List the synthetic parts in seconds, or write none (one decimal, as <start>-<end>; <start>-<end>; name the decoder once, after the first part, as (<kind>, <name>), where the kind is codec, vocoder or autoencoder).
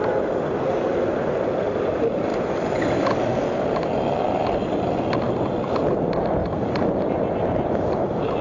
none